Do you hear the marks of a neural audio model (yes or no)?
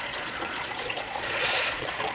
yes